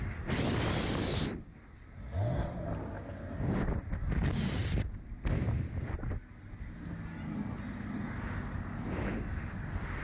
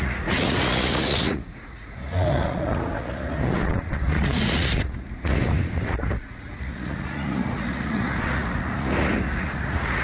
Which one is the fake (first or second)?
second